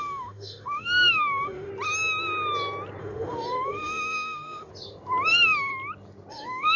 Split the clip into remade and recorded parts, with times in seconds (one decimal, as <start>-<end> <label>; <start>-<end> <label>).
0.0-1.7 remade; 1.7-3.0 recorded; 3.0-4.7 remade; 4.7-5.3 recorded; 5.3-5.7 remade; 5.7-6.3 recorded; 6.3-6.8 remade